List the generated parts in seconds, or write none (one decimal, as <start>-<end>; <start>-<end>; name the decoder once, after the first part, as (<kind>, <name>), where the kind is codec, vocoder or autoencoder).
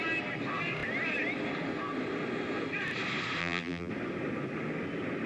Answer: 3.4-3.9 (vocoder, BigVGAN v2)